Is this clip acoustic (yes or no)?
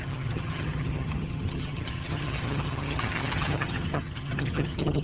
no